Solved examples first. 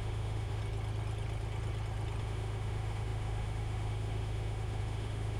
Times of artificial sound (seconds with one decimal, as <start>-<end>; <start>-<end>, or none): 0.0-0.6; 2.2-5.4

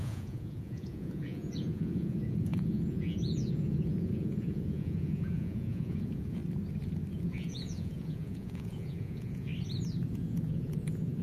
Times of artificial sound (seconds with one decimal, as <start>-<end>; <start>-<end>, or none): 0.0-6.4; 7.1-9.5; 10.1-11.2

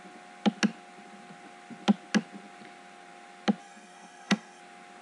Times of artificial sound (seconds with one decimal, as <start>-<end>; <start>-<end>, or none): 3.6-4.6

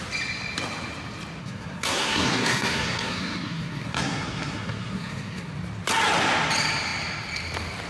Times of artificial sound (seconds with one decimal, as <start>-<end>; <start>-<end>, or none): 1.4-5.5